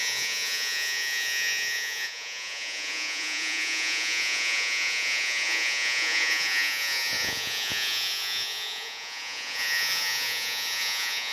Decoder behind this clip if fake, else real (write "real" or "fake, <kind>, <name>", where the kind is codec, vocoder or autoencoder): fake, vocoder, Vocos